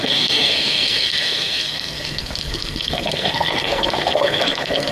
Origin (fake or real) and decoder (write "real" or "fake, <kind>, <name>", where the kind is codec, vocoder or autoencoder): fake, codec, SNAC